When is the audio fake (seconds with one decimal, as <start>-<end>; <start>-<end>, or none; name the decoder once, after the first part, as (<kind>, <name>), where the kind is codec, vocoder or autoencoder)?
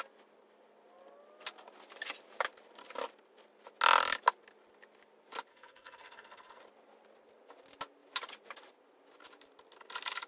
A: 5.5-6.6 (codec, SNAC)